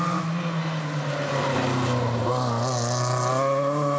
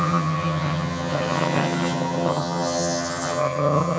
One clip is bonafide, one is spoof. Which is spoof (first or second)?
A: second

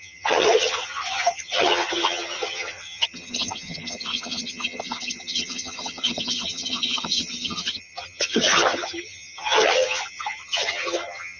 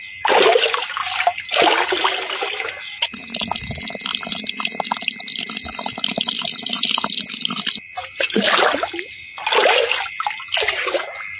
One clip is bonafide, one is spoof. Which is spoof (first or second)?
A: first